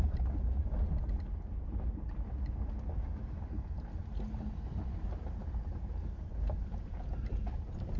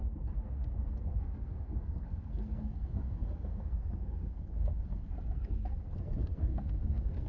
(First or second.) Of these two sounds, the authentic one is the first